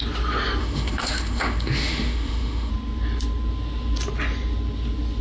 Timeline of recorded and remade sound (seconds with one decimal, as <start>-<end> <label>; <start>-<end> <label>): 0.0-0.6 recorded; 0.6-2.7 remade; 2.7-5.2 recorded